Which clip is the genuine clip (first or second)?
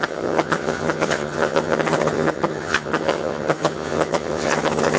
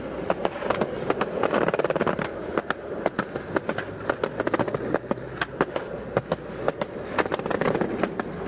second